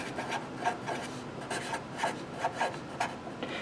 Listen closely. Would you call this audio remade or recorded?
recorded